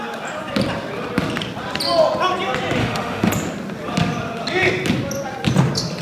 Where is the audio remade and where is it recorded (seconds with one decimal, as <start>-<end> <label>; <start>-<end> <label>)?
0.0-2.8 recorded; 2.8-3.3 remade; 3.3-6.0 recorded